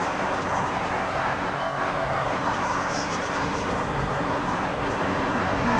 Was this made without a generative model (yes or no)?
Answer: no